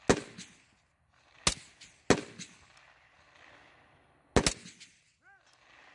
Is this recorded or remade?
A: recorded